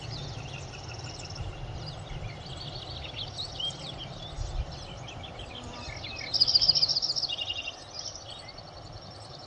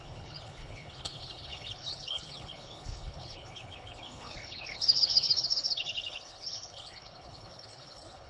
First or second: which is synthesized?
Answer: second